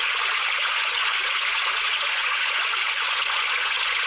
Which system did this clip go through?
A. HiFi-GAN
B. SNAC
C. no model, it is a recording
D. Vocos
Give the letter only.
D